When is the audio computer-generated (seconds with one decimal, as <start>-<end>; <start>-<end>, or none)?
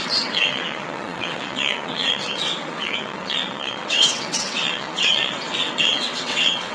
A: 0.0-6.7